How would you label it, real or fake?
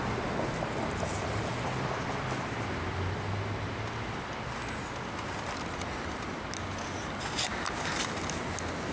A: real